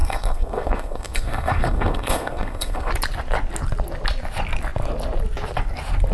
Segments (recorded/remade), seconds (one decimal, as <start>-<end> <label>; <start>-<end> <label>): 0.0-2.9 remade; 2.9-6.1 recorded